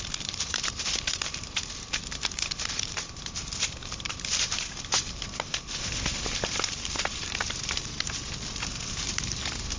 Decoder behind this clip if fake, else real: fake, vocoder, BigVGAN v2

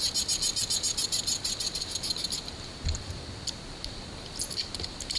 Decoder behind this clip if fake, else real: real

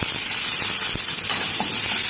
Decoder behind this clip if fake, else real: real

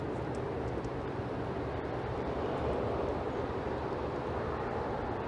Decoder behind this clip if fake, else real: fake, vocoder, BigVGAN v2